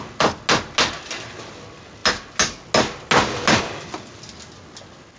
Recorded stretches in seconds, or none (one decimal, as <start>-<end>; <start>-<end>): 0.0-5.2